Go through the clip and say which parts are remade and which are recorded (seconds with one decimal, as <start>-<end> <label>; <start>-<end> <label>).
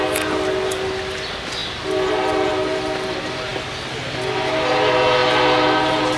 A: 0.0-6.2 recorded